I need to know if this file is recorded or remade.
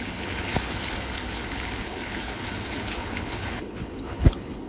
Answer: remade